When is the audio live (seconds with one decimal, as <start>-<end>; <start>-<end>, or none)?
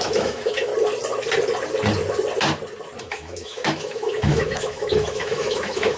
0.7-3.0